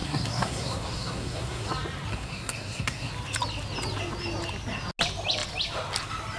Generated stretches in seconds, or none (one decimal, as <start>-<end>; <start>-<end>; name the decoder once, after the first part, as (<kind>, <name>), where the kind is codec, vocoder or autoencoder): 0.0-1.7 (codec, SNAC); 2.1-3.1